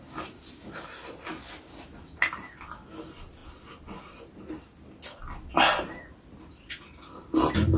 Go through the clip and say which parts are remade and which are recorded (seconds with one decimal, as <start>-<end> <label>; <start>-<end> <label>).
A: 0.0-7.8 recorded